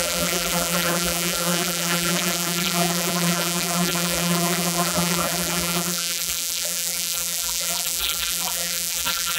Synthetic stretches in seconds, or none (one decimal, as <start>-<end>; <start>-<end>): 0.0-9.4